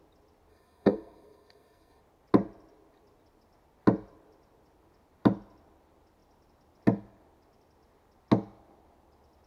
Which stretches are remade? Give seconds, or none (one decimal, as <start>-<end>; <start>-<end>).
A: 0.5-2.0